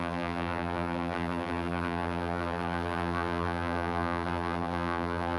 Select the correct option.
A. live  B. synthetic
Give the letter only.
B